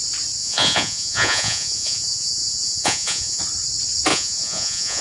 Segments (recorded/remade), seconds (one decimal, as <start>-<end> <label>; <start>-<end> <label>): 0.0-0.4 recorded; 0.4-3.4 remade; 3.4-4.1 recorded; 4.1-5.0 remade